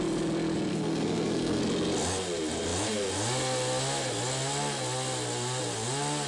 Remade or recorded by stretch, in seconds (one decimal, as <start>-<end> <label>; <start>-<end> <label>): 0.0-0.7 recorded; 0.7-1.6 remade; 1.6-6.3 recorded